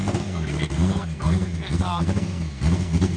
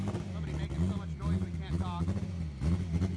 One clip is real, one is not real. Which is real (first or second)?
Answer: second